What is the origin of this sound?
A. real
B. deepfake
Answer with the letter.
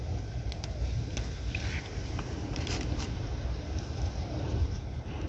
A